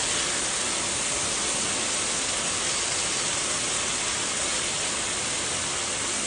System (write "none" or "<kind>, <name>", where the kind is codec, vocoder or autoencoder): none